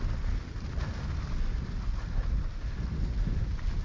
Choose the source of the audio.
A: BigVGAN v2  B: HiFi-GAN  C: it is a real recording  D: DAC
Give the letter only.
C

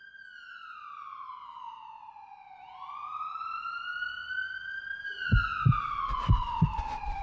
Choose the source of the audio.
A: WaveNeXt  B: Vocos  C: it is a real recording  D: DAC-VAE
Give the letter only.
C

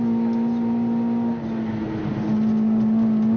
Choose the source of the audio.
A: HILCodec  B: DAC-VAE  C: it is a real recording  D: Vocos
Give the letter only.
C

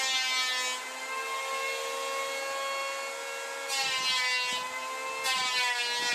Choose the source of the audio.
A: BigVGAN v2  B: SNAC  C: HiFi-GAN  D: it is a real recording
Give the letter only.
D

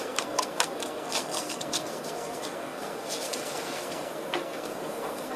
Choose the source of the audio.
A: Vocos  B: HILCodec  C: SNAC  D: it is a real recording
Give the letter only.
C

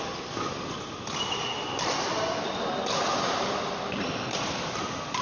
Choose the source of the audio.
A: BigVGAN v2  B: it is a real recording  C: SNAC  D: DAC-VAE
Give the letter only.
B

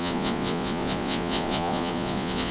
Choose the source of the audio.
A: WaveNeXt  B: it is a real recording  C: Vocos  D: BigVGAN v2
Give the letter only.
C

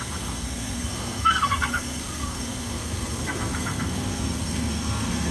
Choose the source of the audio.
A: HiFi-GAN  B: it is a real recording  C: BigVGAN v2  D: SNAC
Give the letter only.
D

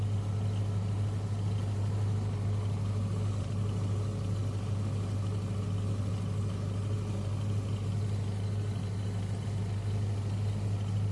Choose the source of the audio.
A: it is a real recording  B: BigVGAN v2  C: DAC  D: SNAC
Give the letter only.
A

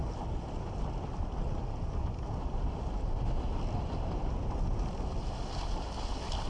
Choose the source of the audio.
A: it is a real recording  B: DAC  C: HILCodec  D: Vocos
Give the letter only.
A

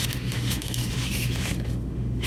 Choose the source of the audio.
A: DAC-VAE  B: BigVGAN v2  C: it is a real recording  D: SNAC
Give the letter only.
A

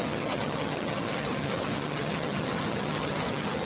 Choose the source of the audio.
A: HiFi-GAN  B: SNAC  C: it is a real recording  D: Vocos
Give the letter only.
A